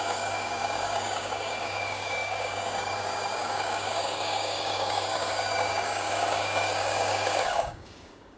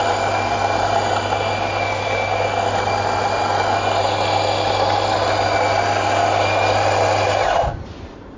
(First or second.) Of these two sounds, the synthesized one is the first